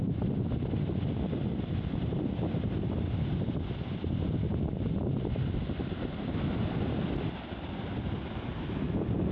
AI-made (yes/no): no